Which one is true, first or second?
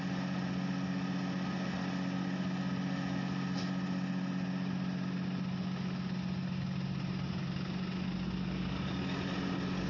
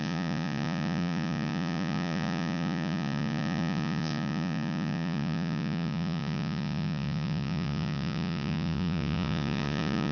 first